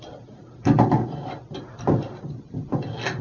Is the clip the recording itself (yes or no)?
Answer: yes